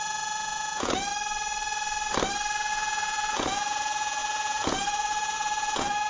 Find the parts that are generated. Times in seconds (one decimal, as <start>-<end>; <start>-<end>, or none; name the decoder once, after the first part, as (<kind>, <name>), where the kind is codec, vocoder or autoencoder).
0.0-1.1 (vocoder, Vocos); 2.7-6.1